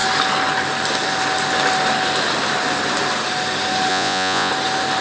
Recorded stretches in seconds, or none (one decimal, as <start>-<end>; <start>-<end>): 0.0-3.9; 4.5-5.0